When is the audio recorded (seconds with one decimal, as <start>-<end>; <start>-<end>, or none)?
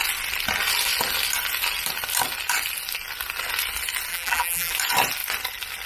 0.0-4.1; 4.7-5.9